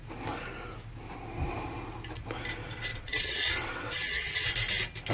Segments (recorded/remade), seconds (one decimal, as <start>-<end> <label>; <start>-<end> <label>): 0.0-2.9 recorded; 2.9-4.5 remade; 4.5-5.1 recorded